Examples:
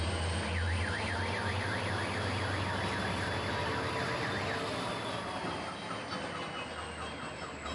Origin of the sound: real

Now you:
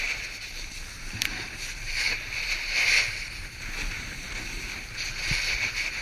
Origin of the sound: real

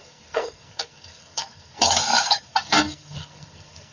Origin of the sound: fake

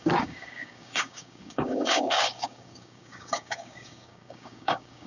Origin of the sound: fake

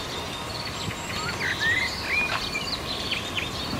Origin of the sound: real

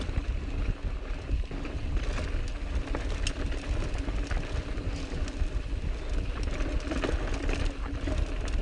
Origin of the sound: real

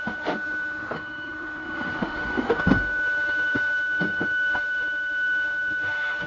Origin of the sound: fake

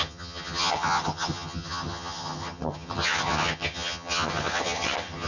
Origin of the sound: fake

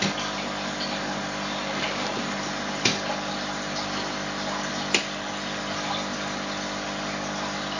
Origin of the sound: real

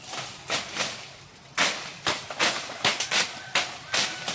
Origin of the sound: real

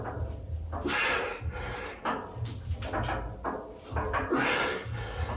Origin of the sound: real